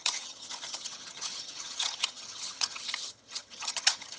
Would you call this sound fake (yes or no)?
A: yes